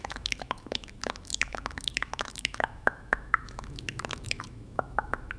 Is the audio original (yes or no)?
no